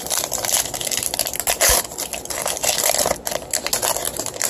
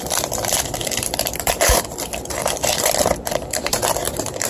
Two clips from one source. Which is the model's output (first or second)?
second